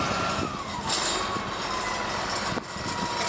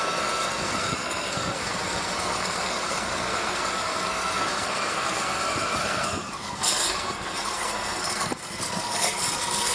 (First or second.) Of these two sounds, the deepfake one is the second